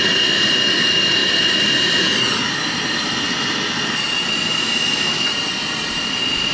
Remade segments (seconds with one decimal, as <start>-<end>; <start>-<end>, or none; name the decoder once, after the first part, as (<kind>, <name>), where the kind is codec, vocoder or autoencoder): none